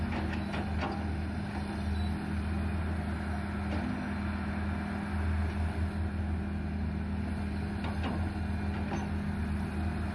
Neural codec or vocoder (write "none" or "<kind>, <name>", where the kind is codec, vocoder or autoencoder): none